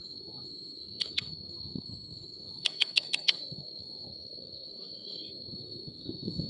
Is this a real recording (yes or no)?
no